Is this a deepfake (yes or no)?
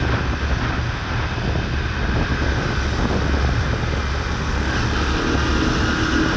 no